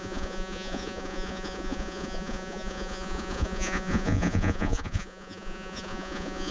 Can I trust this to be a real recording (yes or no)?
no